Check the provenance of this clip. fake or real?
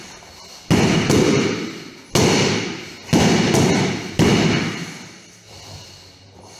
real